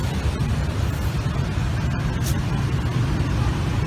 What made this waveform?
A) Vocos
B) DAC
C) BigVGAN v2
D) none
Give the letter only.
D